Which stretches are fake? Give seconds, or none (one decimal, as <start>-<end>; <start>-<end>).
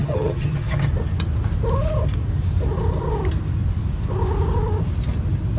0.0-0.9